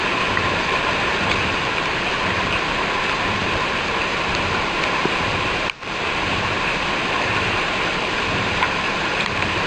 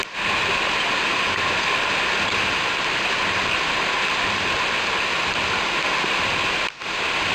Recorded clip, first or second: second